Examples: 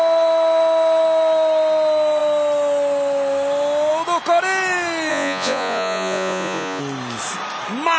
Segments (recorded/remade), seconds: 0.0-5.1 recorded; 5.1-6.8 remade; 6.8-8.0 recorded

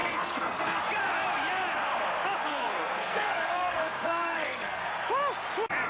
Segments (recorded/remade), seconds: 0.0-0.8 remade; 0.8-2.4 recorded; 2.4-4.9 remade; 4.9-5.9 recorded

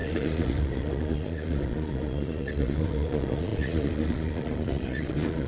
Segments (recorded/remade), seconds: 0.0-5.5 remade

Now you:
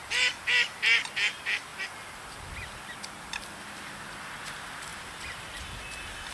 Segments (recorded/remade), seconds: 0.0-6.3 recorded

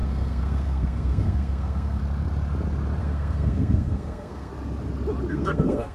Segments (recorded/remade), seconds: 0.0-2.0 remade; 2.0-3.0 recorded; 3.0-4.5 remade; 4.5-5.3 recorded; 5.3-5.9 remade

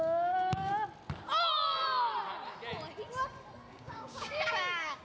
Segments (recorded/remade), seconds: 0.0-0.7 remade; 0.7-3.7 recorded; 3.7-5.0 remade